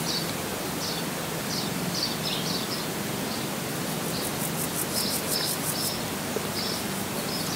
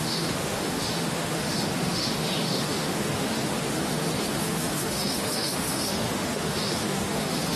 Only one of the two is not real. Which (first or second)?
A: second